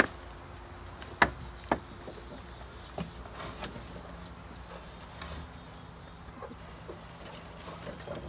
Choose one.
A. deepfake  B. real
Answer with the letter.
B